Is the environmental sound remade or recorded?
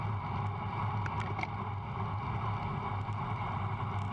recorded